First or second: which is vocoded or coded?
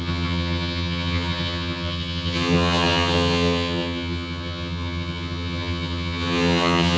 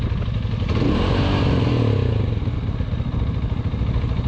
first